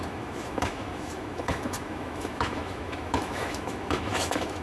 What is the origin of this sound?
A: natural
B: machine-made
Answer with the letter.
B